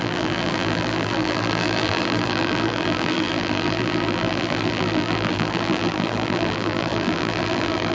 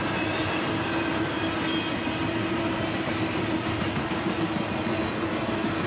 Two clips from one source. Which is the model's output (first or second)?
first